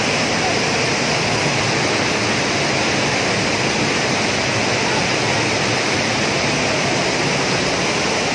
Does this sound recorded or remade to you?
recorded